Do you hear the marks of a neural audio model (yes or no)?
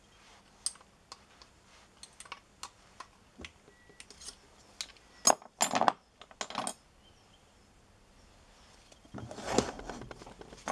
no